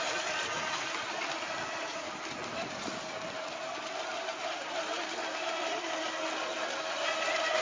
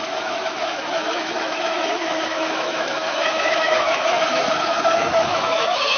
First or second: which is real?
first